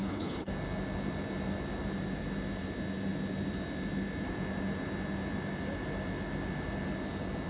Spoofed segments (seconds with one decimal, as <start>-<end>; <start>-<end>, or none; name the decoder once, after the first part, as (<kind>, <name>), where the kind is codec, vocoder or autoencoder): 0.0-0.5 (codec, HILCodec)